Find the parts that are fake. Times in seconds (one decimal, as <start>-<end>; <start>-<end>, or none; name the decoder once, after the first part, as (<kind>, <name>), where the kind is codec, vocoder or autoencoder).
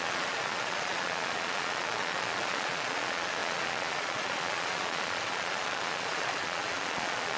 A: 0.0-7.4 (vocoder, Vocos)